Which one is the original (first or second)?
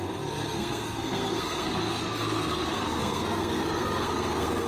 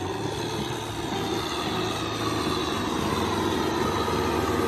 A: second